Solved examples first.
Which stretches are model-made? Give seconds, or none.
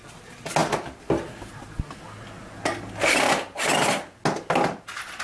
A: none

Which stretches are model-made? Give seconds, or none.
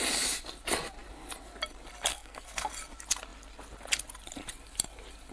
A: 2.1-2.7 (codec, SNAC)